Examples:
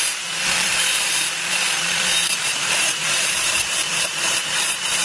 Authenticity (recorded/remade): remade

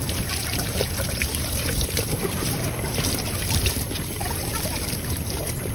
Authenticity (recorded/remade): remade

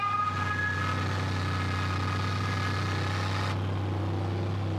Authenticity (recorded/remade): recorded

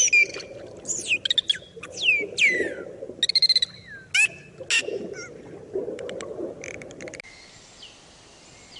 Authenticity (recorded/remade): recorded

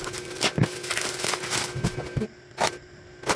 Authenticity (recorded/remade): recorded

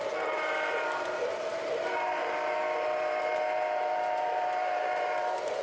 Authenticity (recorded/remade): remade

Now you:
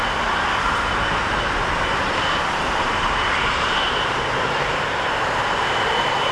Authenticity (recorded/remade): remade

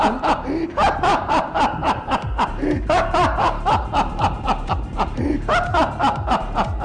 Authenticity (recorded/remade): remade